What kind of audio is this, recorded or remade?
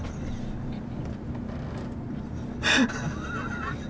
recorded